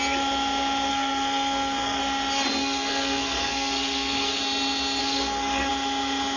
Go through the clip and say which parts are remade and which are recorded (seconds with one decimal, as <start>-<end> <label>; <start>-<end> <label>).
0.0-0.9 recorded; 0.9-2.0 remade; 2.0-2.6 recorded; 2.6-4.4 remade; 4.4-5.0 recorded; 5.0-5.7 remade; 5.7-6.4 recorded